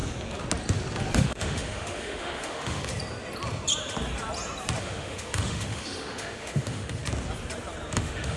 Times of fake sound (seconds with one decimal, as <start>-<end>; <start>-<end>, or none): 1.1-2.9; 4.8-7.0; 7.9-8.4